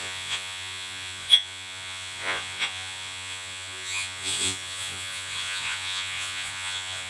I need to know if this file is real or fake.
fake